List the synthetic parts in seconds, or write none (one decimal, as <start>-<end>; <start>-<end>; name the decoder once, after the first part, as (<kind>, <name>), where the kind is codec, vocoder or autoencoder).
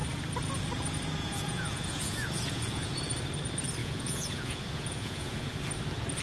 1.2-3.0 (vocoder, Vocos); 3.8-5.5